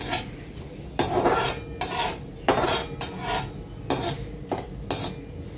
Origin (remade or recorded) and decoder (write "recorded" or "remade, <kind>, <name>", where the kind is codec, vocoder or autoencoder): recorded